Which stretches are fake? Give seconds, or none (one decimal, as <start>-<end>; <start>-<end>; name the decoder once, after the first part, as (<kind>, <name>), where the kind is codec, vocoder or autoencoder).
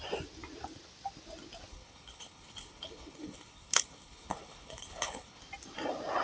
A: 1.7-5.4 (codec, HILCodec)